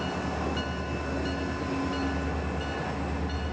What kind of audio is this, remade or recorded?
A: recorded